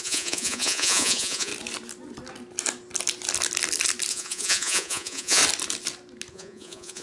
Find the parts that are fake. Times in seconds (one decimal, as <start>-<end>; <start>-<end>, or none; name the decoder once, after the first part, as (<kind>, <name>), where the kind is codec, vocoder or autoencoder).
0.0-1.5 (vocoder, Vocos); 4.1-5.4; 6.3-7.0